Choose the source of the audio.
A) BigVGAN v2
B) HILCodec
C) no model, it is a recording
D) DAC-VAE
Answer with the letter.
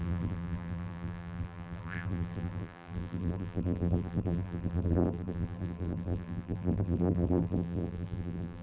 A